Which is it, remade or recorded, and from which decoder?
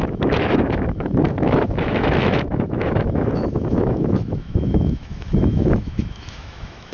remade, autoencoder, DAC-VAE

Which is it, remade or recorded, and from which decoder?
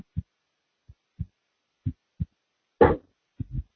recorded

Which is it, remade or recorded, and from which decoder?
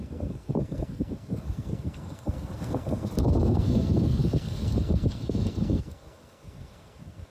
remade, codec, SNAC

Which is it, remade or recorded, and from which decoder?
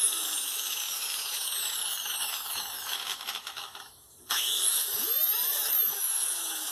remade, autoencoder, DAC-VAE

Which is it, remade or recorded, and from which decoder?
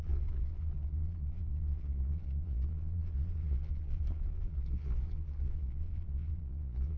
remade, vocoder, Vocos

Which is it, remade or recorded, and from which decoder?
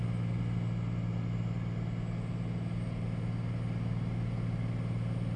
recorded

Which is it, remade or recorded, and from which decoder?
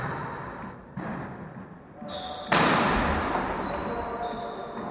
recorded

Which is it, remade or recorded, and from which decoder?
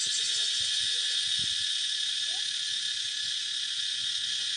remade, vocoder, Vocos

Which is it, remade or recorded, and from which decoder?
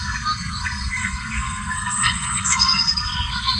remade, codec, SNAC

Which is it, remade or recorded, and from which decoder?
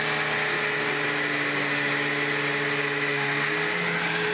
recorded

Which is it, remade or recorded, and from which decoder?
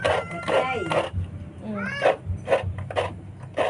recorded